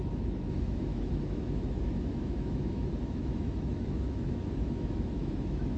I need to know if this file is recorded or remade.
remade